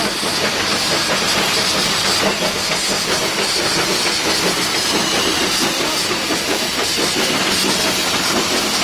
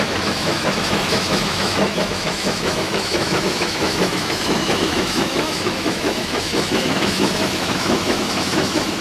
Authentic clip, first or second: first